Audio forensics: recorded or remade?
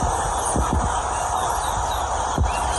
recorded